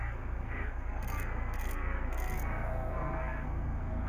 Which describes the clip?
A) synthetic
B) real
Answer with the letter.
A